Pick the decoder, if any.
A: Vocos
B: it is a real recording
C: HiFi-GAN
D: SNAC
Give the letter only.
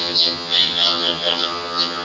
C